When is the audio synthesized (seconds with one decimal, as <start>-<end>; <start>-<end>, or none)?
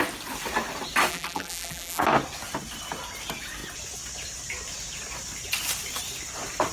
1.1-2.0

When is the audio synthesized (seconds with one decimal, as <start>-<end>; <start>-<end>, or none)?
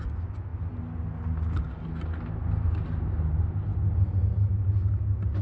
none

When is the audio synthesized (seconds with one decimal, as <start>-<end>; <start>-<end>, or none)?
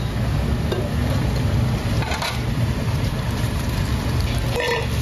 1.0-3.9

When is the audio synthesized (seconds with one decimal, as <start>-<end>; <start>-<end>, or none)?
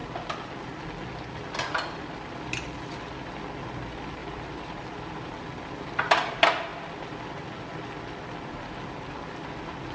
4.2-4.8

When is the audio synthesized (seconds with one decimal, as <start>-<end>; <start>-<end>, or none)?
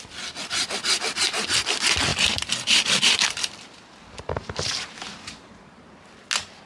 2.1-6.0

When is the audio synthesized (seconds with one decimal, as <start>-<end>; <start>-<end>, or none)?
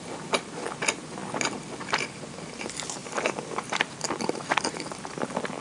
0.0-1.2; 2.0-5.6